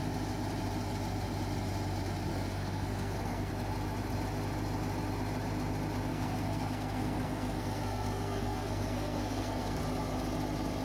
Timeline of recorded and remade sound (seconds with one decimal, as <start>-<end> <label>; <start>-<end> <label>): 0.0-2.3 recorded; 2.3-3.5 remade; 3.5-6.1 recorded; 6.1-9.8 remade; 9.8-10.8 recorded